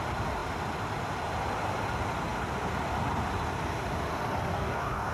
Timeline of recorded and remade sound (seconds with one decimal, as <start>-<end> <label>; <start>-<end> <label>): 0.0-4.5 recorded; 4.5-5.1 remade